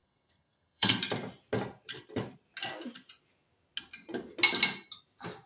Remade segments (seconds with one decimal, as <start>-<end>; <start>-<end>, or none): 0.0-1.0